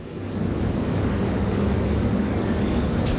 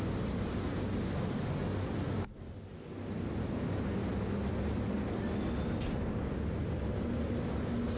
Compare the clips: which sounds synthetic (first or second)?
first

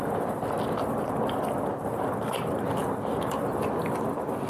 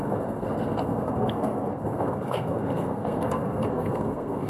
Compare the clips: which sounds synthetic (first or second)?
second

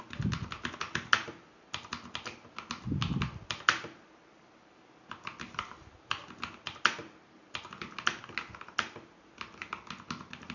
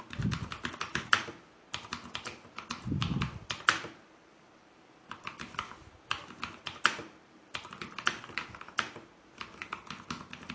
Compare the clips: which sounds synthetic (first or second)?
second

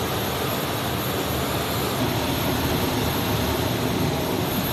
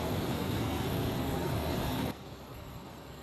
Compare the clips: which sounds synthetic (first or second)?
second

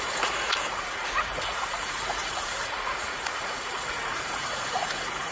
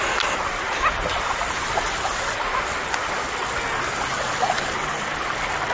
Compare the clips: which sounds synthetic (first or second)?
first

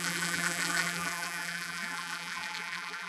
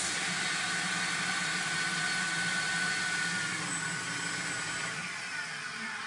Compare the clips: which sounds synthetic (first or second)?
first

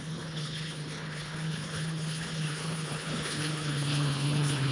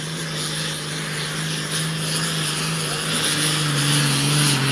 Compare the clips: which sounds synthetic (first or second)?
first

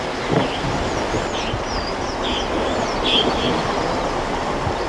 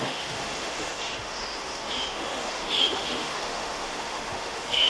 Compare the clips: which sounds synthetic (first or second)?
second